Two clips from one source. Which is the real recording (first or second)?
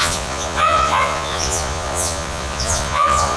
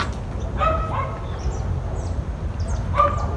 second